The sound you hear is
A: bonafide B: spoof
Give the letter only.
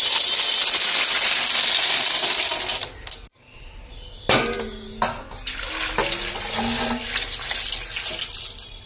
A